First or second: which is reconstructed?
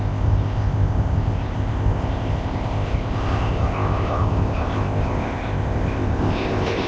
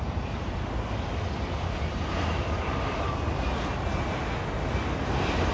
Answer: first